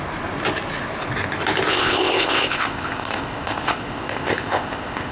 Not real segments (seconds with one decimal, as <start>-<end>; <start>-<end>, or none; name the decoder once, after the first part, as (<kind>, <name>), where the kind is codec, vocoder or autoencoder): 1.7-5.1 (codec, ZipCodec)